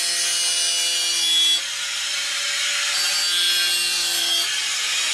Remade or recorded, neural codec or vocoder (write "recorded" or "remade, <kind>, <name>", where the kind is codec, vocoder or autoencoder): recorded